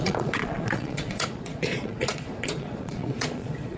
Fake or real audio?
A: fake